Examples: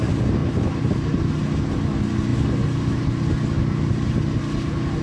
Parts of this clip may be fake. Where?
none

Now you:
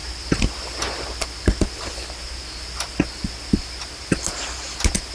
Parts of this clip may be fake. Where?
none

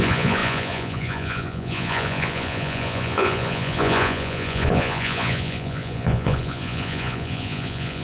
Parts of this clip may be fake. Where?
0.0-8.0 (vocoder, Vocos)

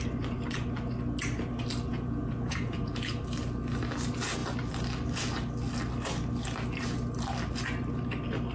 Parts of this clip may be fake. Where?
1.9-3.2 (vocoder, Vocos)